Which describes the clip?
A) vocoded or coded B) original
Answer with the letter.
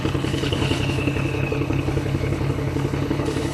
A